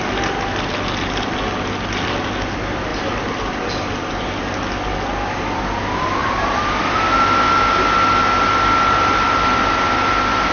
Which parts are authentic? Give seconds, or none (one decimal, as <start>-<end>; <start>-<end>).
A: 0.0-2.9; 4.4-6.2; 6.8-10.5